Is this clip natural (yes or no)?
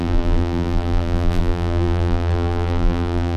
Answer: no